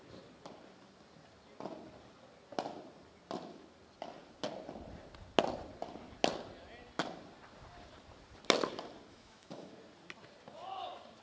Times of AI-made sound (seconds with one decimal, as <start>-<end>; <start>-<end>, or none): 9.1-9.7